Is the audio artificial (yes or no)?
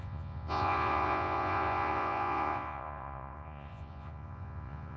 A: yes